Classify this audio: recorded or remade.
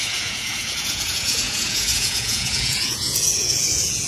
remade